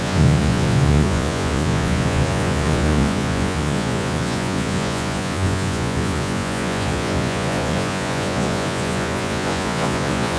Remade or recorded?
remade